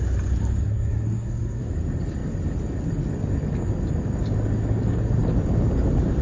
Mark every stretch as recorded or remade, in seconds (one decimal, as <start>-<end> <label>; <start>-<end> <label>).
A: 0.0-0.6 recorded; 0.6-1.7 remade; 1.7-6.2 recorded